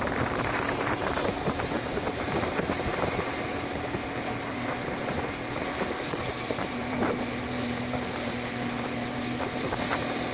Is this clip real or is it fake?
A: fake